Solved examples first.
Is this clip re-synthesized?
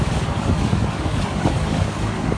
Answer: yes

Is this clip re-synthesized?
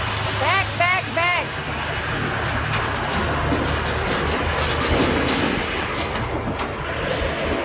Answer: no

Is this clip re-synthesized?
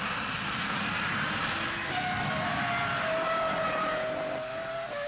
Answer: no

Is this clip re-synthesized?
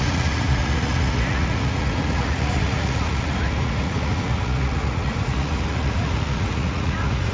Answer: yes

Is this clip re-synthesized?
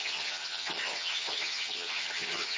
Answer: yes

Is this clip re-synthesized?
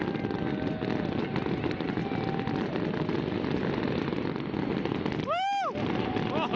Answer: no